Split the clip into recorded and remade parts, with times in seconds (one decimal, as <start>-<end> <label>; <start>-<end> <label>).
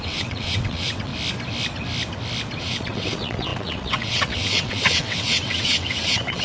0.0-1.1 remade; 1.1-2.6 recorded; 2.6-6.4 remade